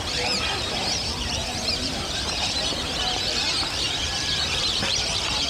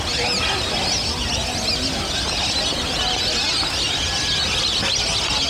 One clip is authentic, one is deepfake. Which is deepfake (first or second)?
first